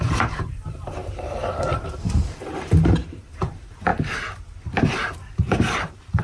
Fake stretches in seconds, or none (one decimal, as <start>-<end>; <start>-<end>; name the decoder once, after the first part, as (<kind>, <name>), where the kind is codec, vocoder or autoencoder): 0.0-3.9 (vocoder, BigVGAN v2); 4.8-6.2